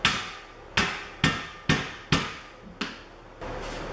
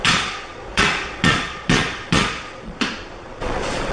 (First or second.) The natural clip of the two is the first